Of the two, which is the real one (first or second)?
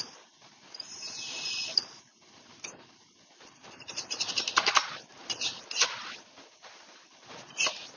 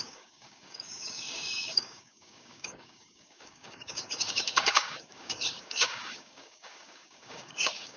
first